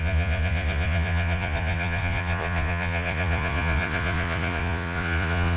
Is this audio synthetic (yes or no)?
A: yes